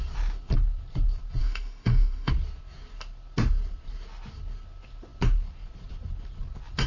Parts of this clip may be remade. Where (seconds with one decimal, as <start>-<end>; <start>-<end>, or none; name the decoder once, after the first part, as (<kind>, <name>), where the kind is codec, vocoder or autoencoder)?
1.4-2.3 (autoencoder, DAC-VAE)

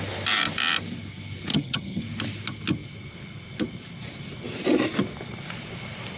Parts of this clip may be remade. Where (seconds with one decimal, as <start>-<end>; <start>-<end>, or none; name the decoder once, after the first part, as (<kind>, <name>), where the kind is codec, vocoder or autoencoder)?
1.5-2.0 (vocoder, HiFi-GAN)

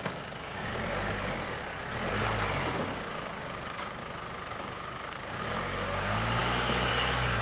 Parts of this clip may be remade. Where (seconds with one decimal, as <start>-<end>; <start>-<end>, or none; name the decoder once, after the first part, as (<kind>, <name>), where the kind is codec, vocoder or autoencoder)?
0.0-0.7 (codec, DAC); 2.9-4.0; 4.5-7.4

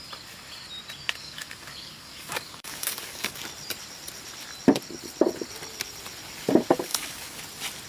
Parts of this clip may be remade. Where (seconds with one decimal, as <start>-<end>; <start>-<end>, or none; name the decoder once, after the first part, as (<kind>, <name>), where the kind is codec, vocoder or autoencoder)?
1.2-3.4 (codec, DAC); 6.9-7.4

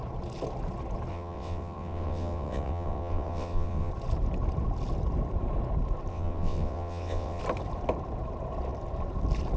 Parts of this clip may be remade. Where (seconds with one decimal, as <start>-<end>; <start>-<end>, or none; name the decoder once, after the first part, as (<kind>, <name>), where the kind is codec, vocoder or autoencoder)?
1.1-3.9 (vocoder, WaveNeXt); 6.1-7.4